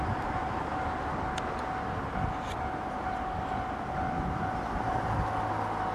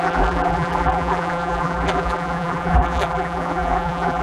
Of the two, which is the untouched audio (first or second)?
first